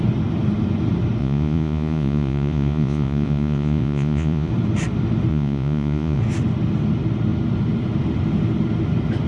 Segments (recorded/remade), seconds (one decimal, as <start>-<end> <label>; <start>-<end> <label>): 0.0-1.2 recorded; 1.2-4.5 remade; 4.5-5.3 recorded; 5.3-6.2 remade; 6.2-9.3 recorded

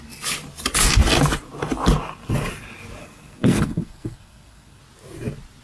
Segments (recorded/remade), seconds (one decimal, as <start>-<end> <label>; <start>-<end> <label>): 0.0-3.0 recorded; 3.0-4.8 remade; 4.8-5.6 recorded

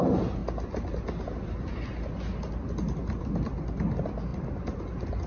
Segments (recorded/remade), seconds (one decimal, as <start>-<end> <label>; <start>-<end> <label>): 0.0-5.3 recorded

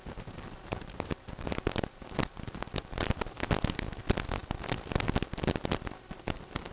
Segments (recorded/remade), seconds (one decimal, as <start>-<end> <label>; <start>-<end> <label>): 0.0-0.7 recorded; 0.7-1.6 remade; 1.6-2.3 recorded; 2.3-3.1 remade; 3.1-6.7 recorded

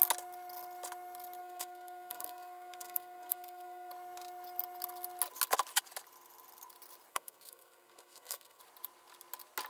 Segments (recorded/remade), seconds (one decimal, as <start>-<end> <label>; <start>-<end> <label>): 0.0-1.4 recorded; 1.4-3.9 remade; 3.9-7.1 recorded; 7.1-8.6 remade; 8.6-9.7 recorded